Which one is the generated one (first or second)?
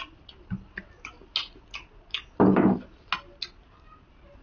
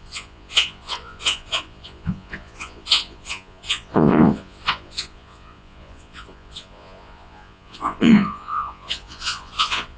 second